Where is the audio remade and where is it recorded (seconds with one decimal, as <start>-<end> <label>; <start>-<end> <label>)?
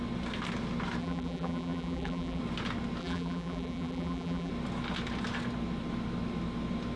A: 0.0-1.0 recorded; 1.0-2.4 remade; 2.4-3.0 recorded; 3.0-4.5 remade; 4.5-7.0 recorded